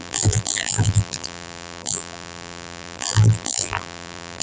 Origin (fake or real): fake